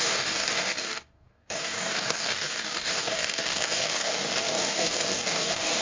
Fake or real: fake